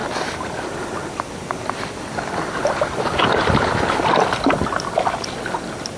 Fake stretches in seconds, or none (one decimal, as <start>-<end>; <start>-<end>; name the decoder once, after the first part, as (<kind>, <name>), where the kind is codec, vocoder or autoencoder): none